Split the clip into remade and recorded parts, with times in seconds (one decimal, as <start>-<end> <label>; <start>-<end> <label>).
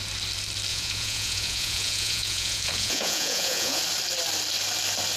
0.0-0.7 recorded; 0.7-3.8 remade; 3.8-5.2 recorded